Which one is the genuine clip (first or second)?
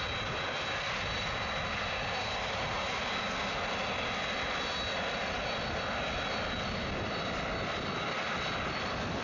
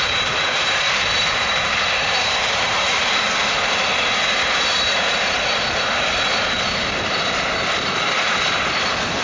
first